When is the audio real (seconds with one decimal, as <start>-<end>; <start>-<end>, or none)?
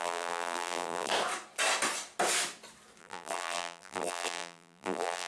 1.1-3.0